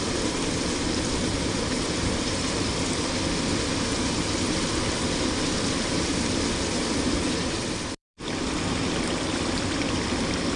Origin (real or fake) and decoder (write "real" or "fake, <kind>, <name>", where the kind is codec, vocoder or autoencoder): fake, vocoder, BigVGAN v2